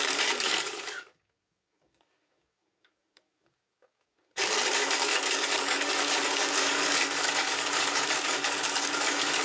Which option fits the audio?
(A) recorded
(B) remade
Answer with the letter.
B